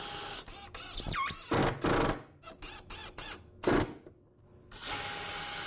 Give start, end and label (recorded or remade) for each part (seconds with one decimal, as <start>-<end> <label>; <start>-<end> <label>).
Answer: 0.0-5.7 recorded